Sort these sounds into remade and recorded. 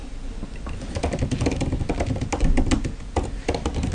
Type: recorded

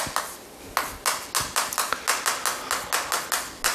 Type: recorded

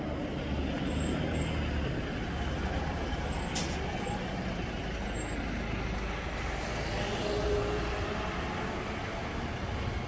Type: recorded